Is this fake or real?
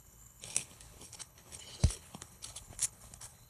fake